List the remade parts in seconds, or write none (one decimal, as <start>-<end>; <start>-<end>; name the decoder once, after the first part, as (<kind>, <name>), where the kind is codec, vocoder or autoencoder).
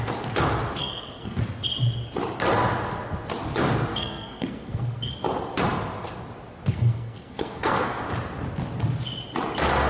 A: 0.8-1.4 (codec, SNAC); 3.9-5.1; 6.7-8.0